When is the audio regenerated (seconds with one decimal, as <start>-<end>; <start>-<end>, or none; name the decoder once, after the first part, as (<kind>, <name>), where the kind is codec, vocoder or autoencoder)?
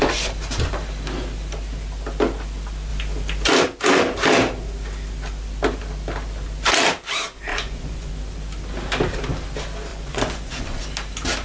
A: 7.5-8.1 (vocoder, Vocos); 9.9-10.8